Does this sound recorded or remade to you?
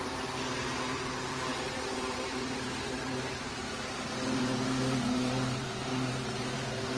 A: remade